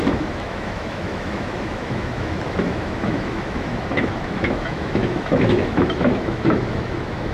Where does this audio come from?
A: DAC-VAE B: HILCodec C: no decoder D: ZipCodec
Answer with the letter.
A